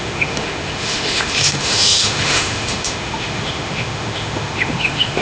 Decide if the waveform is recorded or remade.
remade